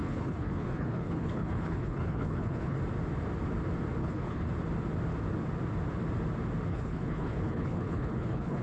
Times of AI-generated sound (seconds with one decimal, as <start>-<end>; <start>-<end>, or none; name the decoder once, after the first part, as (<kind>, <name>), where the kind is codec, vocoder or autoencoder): 0.0-2.8 (codec, HILCodec); 4.0-4.5; 6.7-8.6